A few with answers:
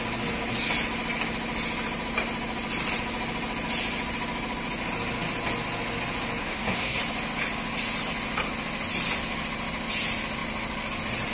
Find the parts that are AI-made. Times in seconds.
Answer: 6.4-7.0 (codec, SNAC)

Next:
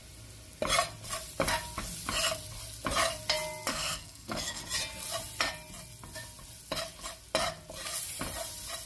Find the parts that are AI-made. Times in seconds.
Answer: 3.7-4.6 (codec, SNAC)